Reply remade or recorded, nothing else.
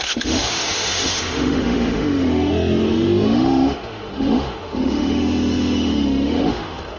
remade